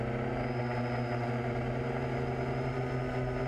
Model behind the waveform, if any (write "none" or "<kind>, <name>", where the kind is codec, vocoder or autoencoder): none